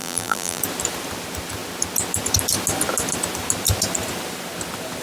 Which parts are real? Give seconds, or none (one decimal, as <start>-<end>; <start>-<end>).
0.6-5.0